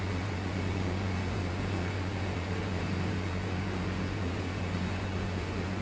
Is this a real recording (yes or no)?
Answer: no